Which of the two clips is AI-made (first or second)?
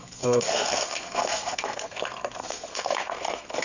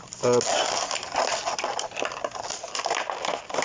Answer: first